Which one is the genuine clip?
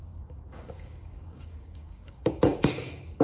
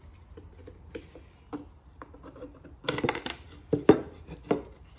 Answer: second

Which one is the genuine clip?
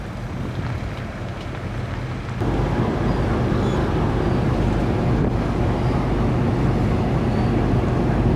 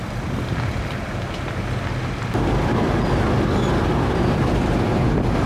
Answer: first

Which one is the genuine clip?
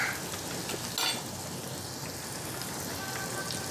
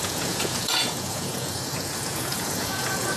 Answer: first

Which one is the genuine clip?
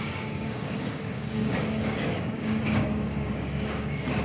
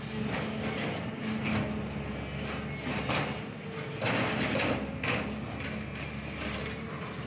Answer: second